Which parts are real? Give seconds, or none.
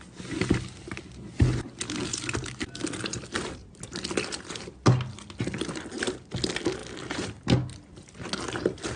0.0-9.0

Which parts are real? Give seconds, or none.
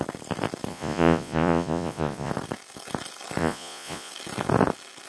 0.0-0.7; 2.3-3.4; 4.1-5.1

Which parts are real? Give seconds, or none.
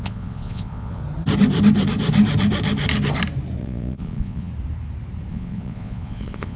1.0-3.6; 4.5-5.3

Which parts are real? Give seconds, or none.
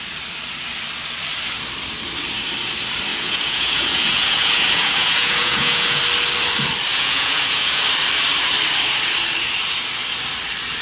0.0-3.1; 6.0-6.9; 7.8-10.8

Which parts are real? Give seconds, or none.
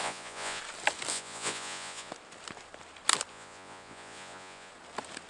0.6-1.1; 2.1-3.3; 4.7-5.3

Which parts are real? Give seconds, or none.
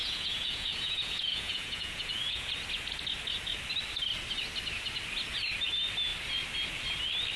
2.5-7.4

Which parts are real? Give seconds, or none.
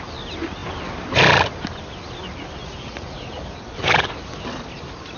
0.0-2.6; 3.4-5.2